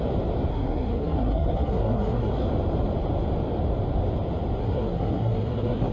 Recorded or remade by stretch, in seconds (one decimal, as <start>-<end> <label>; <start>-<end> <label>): 0.0-0.5 recorded; 0.5-2.5 remade; 2.5-4.6 recorded; 4.6-5.9 remade